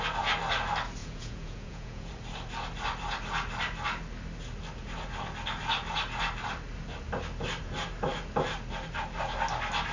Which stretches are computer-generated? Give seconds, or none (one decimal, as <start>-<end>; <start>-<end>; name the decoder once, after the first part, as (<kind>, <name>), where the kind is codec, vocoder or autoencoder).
1.0-2.1 (vocoder, Vocos)